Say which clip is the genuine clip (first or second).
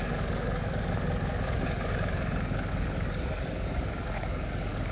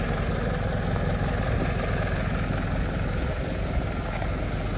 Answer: second